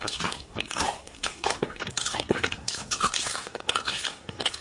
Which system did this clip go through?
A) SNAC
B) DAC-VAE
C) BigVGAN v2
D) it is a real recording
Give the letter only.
A